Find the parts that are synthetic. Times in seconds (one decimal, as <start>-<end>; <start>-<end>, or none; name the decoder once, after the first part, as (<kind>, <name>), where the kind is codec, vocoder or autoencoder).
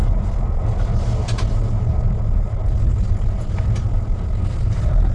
none